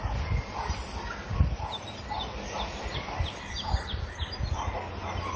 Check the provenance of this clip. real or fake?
real